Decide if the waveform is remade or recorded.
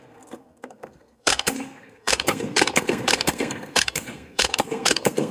remade